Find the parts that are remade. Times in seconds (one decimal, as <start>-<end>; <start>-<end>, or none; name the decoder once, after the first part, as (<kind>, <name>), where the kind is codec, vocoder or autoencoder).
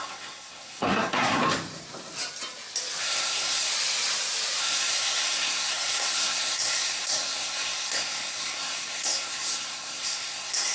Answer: 0.0-1.4 (codec, SNAC); 3.0-3.7; 4.6-10.7